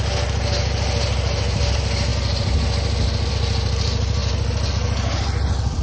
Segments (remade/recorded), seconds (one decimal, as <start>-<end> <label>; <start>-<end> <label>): 0.0-5.8 recorded